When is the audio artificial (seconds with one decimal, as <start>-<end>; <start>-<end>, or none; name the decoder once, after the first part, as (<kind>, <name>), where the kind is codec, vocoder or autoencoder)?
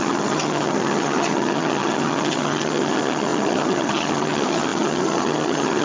0.0-5.8 (vocoder, HiFi-GAN)